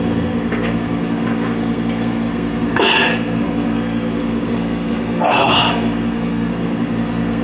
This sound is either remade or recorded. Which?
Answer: remade